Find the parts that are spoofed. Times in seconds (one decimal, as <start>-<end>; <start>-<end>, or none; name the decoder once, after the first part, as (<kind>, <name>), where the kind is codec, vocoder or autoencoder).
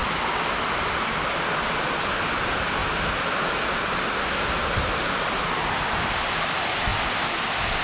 none